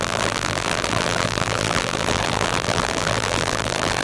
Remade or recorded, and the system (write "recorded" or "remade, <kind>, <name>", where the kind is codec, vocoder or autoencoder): remade, vocoder, BigVGAN v2